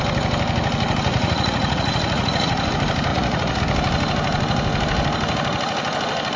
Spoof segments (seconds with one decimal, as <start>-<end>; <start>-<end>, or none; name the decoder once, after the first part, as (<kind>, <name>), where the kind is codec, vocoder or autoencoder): 1.1-2.7 (vocoder, Vocos); 3.1-3.6